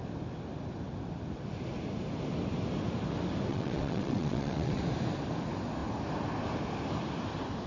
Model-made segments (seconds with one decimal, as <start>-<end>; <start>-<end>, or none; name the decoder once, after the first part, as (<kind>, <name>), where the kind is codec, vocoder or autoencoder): 3.5-4.8 (vocoder, WaveNeXt)